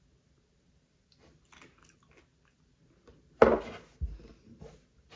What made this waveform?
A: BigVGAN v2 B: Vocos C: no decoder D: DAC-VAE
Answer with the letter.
C